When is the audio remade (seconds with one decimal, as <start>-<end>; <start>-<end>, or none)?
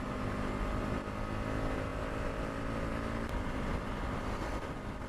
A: none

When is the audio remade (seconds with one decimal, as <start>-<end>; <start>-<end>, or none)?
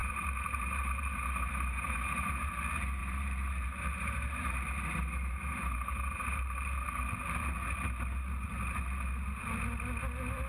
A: 0.0-2.5; 3.0-6.4